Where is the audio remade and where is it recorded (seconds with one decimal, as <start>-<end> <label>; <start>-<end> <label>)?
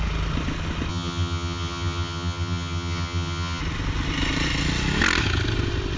0.0-0.9 recorded; 0.9-3.6 remade; 3.6-6.0 recorded